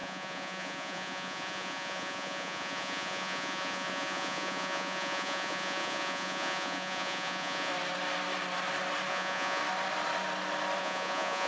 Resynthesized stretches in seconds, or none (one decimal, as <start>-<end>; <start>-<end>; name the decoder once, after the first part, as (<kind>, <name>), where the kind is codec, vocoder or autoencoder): 0.0-7.7 (vocoder, Vocos); 9.1-9.6; 10.8-11.5